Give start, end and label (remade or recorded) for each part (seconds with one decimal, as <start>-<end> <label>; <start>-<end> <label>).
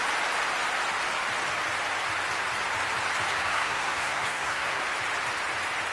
0.0-3.3 recorded; 3.3-4.8 remade; 4.8-5.9 recorded